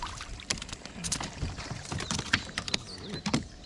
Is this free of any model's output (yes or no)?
no